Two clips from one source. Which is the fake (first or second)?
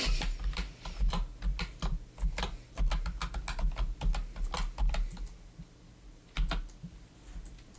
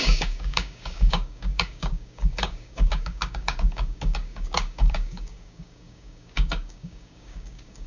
second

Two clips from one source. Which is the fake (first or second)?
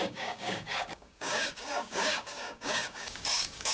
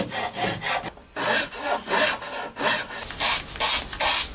first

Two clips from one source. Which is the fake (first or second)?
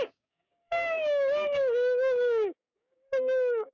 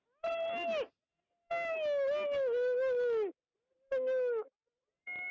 first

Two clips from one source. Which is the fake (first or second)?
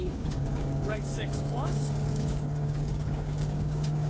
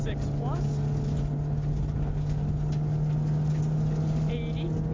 first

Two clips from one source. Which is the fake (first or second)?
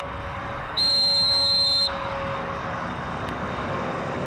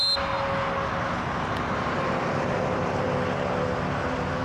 first